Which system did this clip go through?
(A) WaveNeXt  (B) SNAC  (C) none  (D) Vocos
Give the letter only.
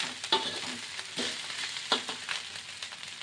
C